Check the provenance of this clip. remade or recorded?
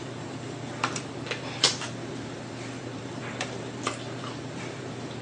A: remade